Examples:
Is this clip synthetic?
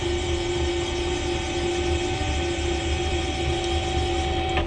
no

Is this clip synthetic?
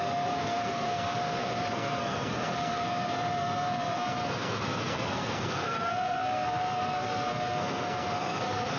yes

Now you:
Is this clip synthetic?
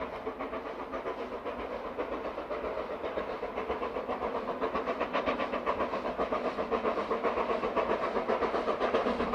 no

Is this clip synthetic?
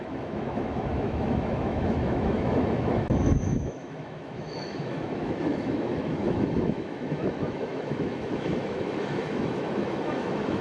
yes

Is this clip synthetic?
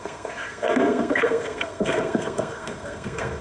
yes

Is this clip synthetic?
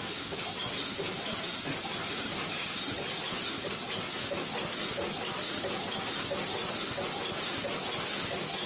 no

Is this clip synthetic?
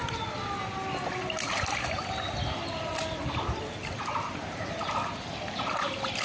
no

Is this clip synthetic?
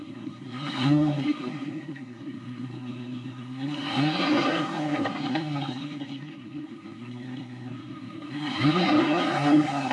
yes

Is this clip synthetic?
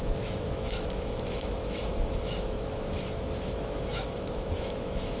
yes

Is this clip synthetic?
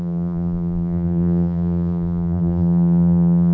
yes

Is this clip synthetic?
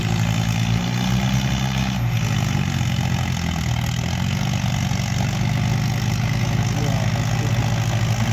no